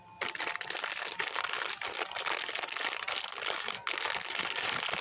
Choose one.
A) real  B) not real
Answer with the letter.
A